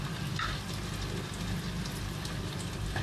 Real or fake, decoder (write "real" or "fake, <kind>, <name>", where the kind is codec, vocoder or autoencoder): real